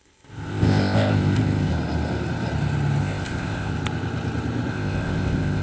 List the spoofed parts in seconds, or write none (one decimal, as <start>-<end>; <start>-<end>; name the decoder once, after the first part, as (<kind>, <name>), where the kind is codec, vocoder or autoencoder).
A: 0.0-1.7 (codec, ZipCodec); 3.0-3.7; 4.7-5.6